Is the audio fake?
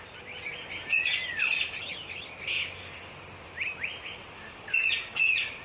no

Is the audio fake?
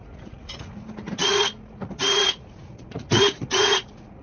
yes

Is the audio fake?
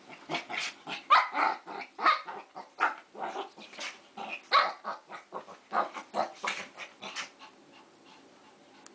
yes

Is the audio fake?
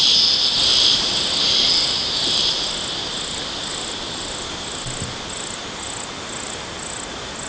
no